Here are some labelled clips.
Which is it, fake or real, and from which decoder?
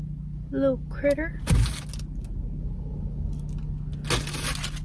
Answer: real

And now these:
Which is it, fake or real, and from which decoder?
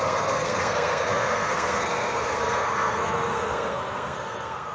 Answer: fake, codec, SNAC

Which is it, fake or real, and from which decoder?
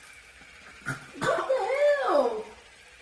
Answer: real